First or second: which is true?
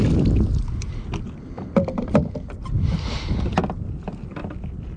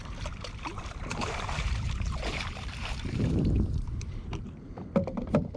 first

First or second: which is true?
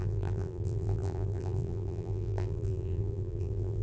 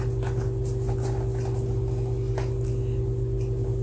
second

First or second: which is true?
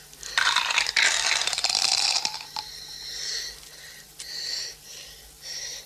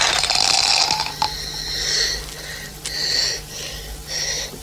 second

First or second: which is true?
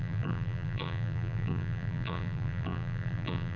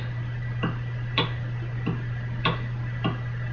second